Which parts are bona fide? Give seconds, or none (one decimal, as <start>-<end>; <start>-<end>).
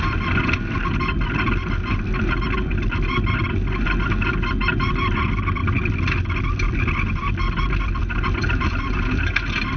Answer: 5.6-6.4